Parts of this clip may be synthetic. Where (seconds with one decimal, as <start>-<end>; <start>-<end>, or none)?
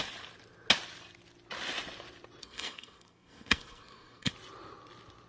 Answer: 2.4-4.3